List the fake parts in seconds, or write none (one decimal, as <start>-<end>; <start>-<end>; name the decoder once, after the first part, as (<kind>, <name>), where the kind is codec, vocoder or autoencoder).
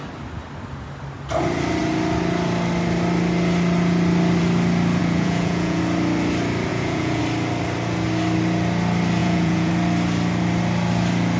5.0-5.8 (vocoder, Vocos); 6.7-7.2; 9.2-9.7